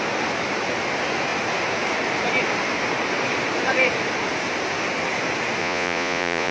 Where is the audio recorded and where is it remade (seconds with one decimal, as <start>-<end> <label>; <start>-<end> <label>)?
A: 0.0-5.6 recorded; 5.6-6.5 remade

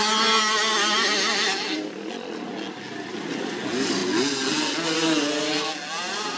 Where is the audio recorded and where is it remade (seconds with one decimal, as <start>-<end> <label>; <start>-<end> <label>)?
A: 0.0-6.4 recorded

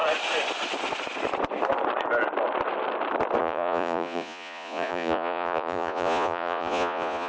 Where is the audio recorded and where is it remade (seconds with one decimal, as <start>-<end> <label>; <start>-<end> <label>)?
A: 0.0-3.4 recorded; 3.4-7.3 remade